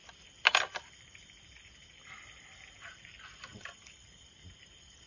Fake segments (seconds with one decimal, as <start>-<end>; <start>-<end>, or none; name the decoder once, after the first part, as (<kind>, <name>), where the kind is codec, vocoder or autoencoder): none